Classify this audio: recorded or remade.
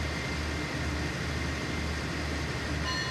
recorded